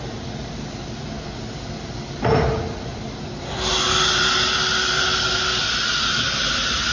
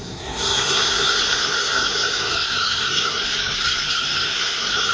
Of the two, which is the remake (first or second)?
second